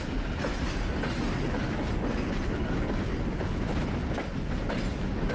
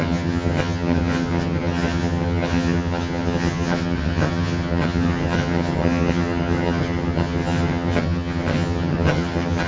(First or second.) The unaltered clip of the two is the first